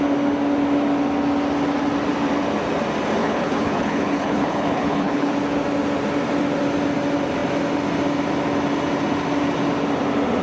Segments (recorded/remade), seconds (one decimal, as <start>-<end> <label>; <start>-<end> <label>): 0.0-3.2 recorded; 3.2-5.3 remade; 5.3-10.4 recorded